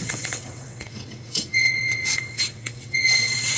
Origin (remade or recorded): remade